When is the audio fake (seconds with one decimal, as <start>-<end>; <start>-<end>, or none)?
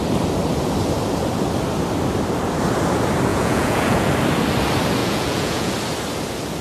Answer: 3.3-4.1; 5.0-5.7